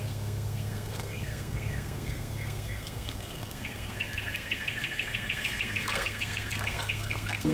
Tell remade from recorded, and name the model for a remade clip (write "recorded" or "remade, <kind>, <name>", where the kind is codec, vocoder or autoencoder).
remade, codec, SNAC